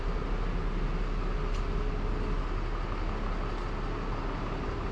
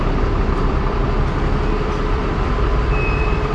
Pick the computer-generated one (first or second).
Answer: second